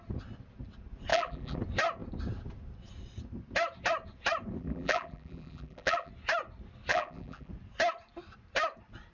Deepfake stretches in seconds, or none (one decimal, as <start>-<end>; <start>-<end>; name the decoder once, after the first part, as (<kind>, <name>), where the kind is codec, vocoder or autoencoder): 1.1-1.6 (vocoder, BigVGAN v2); 4.6-6.1; 6.9-7.5